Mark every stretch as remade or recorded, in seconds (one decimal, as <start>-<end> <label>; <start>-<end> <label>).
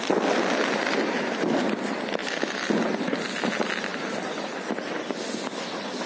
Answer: 0.0-6.1 recorded